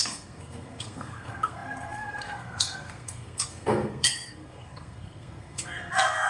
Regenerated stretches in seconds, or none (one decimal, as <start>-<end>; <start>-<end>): 0.0-6.3